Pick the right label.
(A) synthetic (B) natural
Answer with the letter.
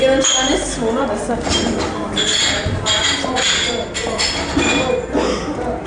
B